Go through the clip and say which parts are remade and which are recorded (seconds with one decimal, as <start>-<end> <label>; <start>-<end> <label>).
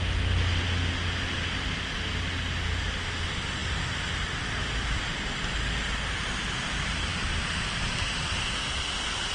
0.0-9.3 recorded